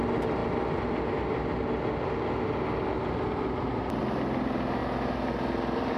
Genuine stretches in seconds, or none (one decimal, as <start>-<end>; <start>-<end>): 0.0-6.0